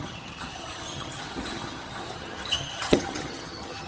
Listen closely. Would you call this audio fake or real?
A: fake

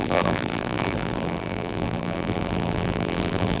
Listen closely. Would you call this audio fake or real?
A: fake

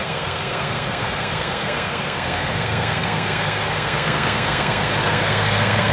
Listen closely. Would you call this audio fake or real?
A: fake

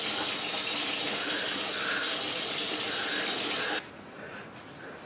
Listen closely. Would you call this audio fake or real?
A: real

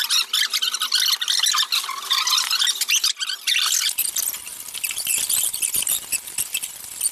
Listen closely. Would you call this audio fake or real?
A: real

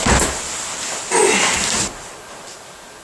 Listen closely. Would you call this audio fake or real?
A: real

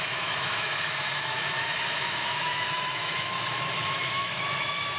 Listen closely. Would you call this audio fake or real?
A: fake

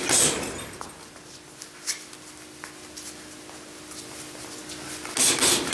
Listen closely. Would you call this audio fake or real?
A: real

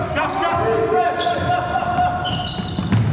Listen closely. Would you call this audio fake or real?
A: real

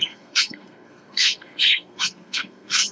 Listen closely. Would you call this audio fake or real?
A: fake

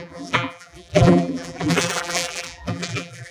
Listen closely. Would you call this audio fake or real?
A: fake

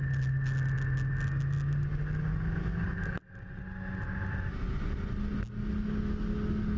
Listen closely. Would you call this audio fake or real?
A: real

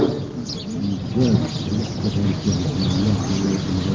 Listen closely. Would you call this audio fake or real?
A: real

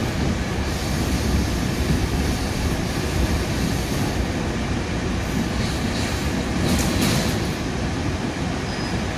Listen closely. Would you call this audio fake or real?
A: real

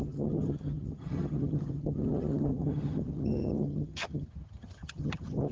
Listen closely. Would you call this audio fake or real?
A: fake